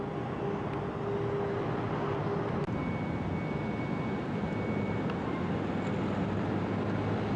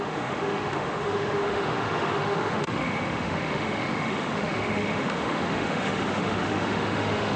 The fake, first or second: second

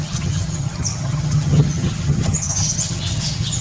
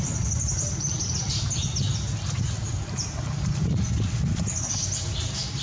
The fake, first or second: first